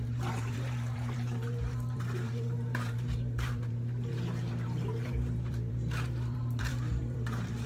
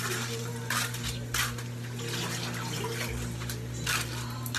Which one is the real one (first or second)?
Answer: second